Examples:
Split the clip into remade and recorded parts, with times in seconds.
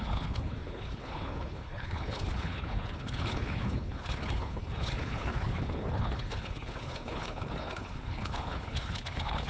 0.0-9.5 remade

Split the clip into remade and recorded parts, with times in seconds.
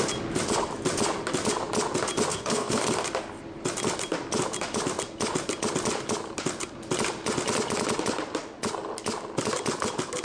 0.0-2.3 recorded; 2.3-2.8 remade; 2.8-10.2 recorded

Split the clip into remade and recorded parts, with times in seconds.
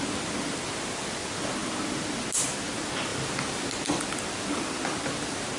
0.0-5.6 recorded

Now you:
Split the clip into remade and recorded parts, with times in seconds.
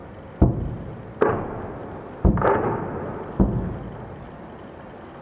0.0-5.2 recorded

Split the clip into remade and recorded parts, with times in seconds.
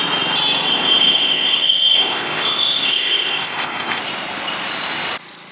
0.0-0.7 recorded; 0.7-4.0 remade; 4.0-5.5 recorded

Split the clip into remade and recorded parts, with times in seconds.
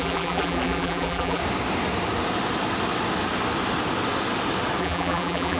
0.0-1.4 remade; 1.4-4.8 recorded; 4.8-5.6 remade